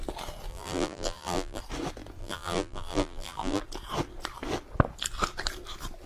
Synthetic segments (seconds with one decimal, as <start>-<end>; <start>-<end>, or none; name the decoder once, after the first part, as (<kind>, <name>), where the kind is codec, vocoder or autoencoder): 0.5-1.6 (vocoder, BigVGAN v2); 2.2-3.6

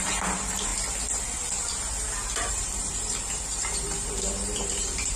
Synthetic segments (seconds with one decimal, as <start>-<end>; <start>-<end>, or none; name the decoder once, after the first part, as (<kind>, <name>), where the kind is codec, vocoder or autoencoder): 0.0-0.7 (vocoder, BigVGAN v2); 2.5-5.2

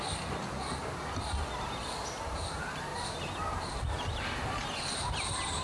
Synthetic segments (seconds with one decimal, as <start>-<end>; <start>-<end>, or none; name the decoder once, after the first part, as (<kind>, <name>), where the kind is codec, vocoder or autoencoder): 2.9-3.7 (vocoder, BigVGAN v2)

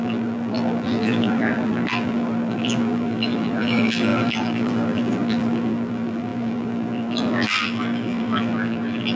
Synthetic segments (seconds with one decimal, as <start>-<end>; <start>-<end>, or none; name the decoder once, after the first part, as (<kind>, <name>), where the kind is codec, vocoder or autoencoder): 0.0-9.2 (vocoder, BigVGAN v2)

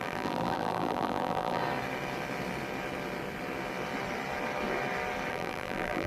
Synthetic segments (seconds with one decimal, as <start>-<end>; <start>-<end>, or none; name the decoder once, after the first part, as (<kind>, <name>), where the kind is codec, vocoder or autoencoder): 0.0-1.6 (vocoder, BigVGAN v2); 5.3-6.1

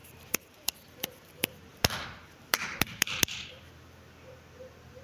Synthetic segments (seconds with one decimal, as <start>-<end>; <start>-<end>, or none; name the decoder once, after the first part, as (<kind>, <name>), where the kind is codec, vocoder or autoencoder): 0.0-0.7 (vocoder, BigVGAN v2); 1.7-3.5